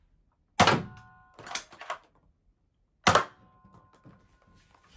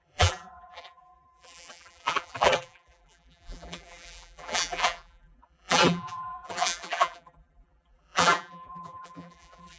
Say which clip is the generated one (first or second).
second